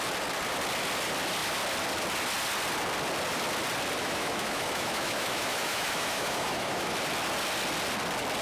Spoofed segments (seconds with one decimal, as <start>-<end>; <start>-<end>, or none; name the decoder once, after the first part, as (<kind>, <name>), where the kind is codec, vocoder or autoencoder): 4.0-6.9 (autoencoder, DAC-VAE)